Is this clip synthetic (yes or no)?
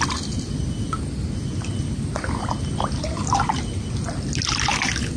no